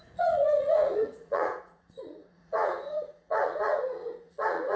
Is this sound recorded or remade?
remade